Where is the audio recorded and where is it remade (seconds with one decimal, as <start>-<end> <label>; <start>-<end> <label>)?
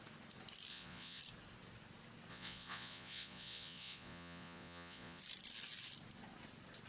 0.0-0.7 recorded; 0.7-1.2 remade; 1.2-2.3 recorded; 2.3-5.2 remade; 5.2-6.9 recorded